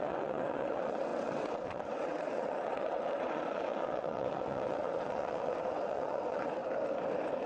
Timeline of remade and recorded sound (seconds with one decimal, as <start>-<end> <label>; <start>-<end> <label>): 0.0-6.6 remade; 6.6-7.5 recorded